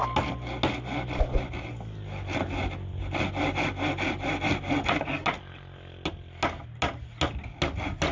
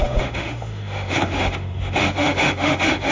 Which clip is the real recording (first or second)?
first